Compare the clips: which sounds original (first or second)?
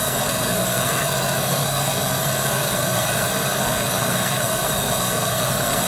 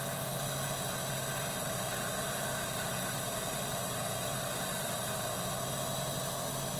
second